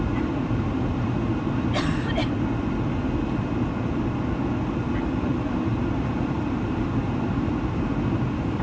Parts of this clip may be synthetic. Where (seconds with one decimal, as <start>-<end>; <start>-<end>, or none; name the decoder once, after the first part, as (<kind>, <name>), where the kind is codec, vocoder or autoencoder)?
0.0-2.2 (vocoder, BigVGAN v2); 5.0-8.6